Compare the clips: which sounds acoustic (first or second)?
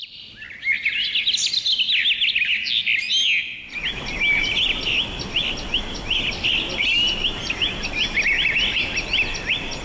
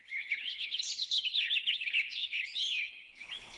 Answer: first